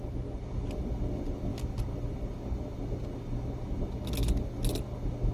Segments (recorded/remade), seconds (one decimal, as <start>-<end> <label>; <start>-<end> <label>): 0.0-5.3 recorded

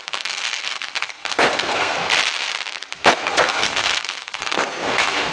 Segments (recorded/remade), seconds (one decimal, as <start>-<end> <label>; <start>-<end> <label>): 0.0-2.0 remade; 2.0-3.1 recorded; 3.1-5.3 remade

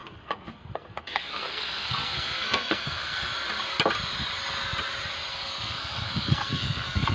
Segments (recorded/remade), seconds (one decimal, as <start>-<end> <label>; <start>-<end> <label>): 0.0-3.3 remade; 3.3-5.3 recorded; 5.3-7.1 remade

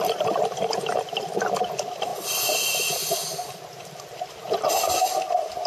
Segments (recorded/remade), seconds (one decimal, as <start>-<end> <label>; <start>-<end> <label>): 0.0-5.7 recorded

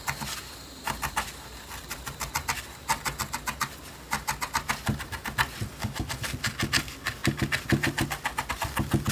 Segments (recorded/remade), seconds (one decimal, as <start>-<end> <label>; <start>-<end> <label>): 0.0-9.1 recorded

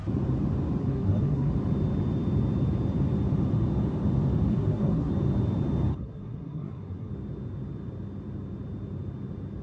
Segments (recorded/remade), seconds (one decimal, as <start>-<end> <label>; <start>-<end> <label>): 0.0-0.8 recorded; 0.8-1.5 remade; 1.5-4.5 recorded; 4.5-5.1 remade; 5.1-5.9 recorded; 5.9-7.1 remade; 7.1-9.6 recorded